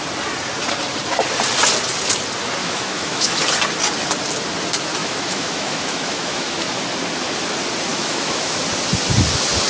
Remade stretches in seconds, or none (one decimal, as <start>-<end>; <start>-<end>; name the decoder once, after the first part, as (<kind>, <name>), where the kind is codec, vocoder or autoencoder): 2.6-3.4 (autoencoder, DAC-VAE); 5.0-6.8; 7.9-8.6